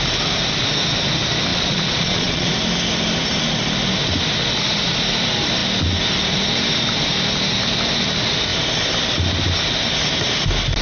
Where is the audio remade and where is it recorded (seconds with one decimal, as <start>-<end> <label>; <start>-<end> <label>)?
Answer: 0.0-1.5 recorded; 1.5-2.5 remade; 2.5-10.8 recorded